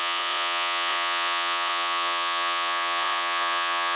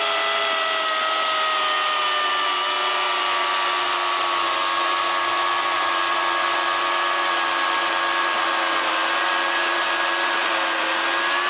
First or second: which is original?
second